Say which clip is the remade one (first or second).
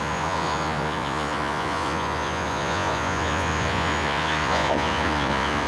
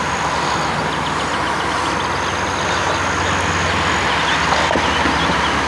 first